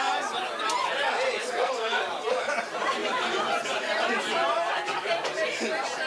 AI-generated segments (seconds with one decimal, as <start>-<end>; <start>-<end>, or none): 1.4-2.0